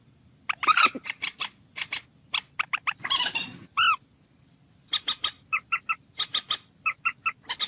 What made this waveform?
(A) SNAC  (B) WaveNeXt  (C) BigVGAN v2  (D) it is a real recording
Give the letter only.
D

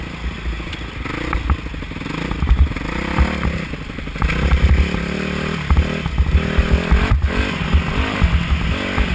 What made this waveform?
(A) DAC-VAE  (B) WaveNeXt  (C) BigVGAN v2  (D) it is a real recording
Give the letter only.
D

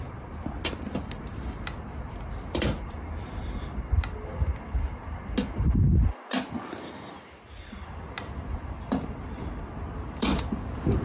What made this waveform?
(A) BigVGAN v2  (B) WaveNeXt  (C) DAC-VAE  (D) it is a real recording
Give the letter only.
D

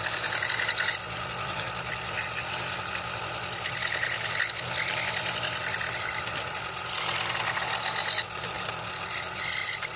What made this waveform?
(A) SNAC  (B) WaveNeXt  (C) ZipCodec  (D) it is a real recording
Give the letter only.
D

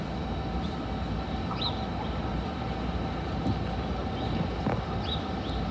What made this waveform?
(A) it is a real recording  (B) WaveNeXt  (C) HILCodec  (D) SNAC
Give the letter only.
A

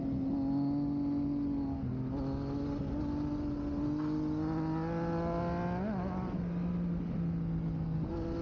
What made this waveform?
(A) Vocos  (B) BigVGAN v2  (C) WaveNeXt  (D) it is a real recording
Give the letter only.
D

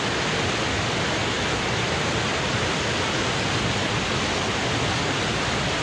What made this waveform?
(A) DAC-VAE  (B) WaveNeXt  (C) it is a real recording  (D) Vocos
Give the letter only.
C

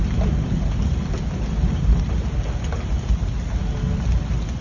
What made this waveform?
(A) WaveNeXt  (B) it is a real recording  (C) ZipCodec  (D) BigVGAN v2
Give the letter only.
B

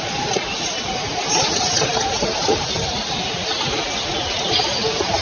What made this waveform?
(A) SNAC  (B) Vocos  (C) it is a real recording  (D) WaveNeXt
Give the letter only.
C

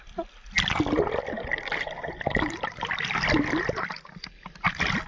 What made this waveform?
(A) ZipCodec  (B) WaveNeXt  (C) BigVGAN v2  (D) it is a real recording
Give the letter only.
D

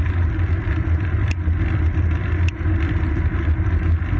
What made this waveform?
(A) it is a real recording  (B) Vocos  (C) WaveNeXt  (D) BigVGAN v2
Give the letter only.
A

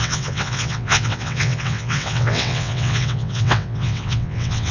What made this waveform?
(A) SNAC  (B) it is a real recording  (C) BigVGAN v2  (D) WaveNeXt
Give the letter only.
D